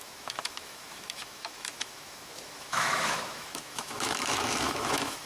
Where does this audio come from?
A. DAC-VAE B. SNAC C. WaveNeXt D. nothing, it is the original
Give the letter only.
A